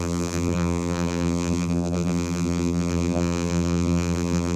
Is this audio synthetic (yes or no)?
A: yes